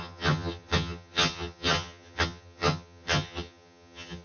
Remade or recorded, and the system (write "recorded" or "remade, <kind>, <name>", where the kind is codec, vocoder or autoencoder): remade, vocoder, HiFi-GAN